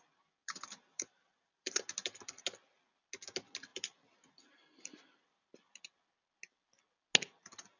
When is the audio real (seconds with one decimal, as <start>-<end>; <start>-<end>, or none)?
0.0-0.4; 2.4-3.7; 5.8-7.8